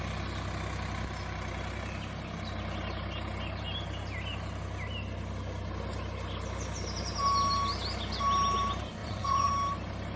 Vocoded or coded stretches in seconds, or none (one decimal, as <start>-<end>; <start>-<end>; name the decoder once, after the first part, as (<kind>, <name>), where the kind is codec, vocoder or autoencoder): 9.0-9.5 (vocoder, Vocos)

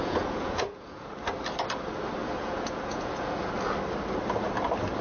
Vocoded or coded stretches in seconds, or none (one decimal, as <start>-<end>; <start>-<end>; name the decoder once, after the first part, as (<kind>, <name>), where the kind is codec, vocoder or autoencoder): 0.0-1.1 (vocoder, Vocos); 2.2-3.5

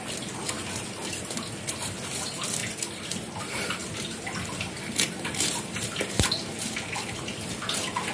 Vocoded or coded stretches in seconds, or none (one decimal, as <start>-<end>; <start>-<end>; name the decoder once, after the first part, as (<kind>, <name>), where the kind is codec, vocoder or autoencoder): none